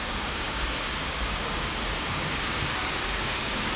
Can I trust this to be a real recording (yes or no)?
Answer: no